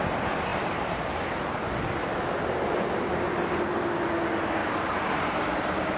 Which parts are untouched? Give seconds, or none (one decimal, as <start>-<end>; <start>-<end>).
0.0-0.5; 1.0-4.6

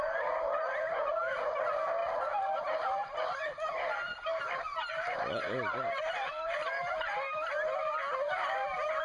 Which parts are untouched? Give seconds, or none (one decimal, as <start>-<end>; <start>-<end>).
0.0-4.1; 7.5-9.0

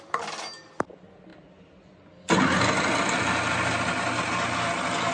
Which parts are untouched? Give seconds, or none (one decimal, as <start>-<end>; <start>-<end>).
0.0-5.1